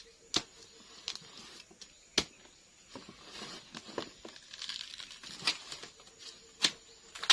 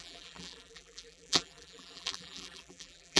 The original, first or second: first